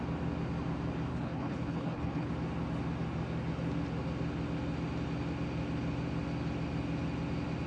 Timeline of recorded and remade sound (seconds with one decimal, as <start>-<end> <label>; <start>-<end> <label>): 0.0-1.1 recorded; 1.1-2.3 remade; 2.3-7.7 recorded